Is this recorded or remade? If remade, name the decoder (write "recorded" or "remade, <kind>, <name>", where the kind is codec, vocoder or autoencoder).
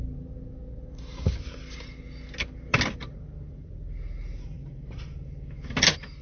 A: recorded